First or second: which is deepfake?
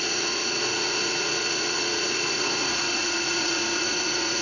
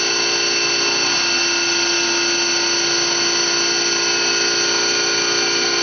first